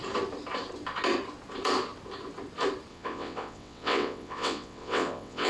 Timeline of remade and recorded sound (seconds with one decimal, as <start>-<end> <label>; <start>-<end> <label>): 0.0-2.9 recorded; 2.9-5.5 remade